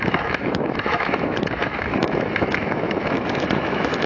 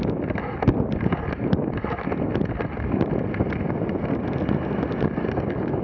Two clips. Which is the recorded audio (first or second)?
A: second